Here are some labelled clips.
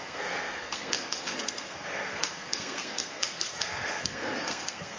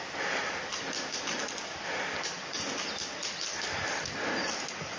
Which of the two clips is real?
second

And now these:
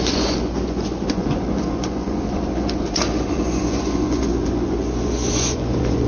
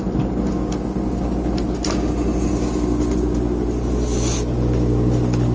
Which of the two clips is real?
second